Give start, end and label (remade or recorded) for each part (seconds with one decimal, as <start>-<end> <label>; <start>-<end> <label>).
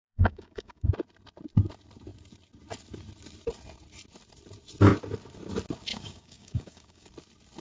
0.0-0.9 remade; 0.9-5.9 recorded; 5.9-7.1 remade; 7.1-7.6 recorded